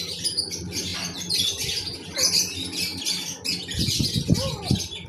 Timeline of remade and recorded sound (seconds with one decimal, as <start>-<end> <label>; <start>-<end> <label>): 0.0-5.1 recorded